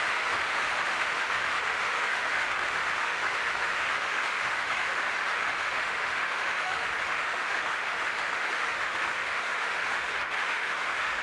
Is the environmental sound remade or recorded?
remade